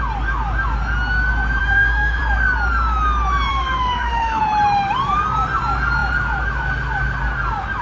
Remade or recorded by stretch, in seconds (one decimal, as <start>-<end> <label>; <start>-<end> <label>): 0.0-1.6 recorded; 1.6-2.2 remade; 2.2-3.5 recorded; 3.5-4.4 remade; 4.4-7.8 recorded